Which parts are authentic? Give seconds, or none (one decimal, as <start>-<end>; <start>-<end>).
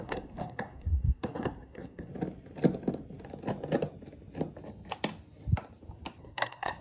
2.1-6.2